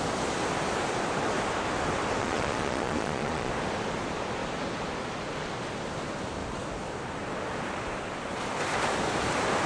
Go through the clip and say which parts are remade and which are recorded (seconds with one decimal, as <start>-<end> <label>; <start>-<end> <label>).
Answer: 0.0-2.2 recorded; 2.2-3.5 remade; 3.5-9.7 recorded